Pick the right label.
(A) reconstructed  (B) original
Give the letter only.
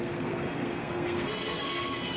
A